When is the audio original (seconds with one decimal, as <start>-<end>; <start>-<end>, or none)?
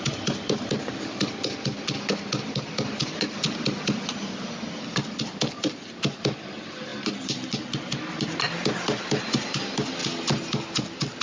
0.0-11.2